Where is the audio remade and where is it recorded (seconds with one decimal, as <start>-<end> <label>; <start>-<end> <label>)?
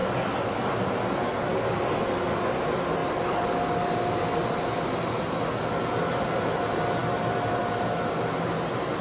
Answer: 0.0-9.0 recorded